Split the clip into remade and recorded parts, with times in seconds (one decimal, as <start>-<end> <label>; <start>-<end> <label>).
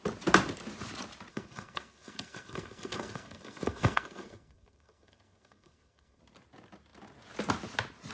0.0-1.3 recorded; 1.3-6.2 remade; 6.2-8.1 recorded